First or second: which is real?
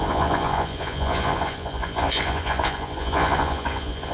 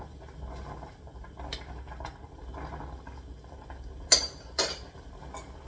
second